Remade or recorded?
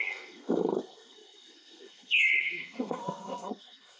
remade